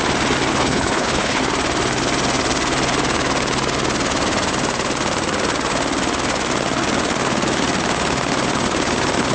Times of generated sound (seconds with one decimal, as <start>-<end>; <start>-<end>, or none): 0.5-1.4